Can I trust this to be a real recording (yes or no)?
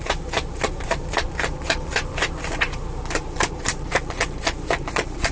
no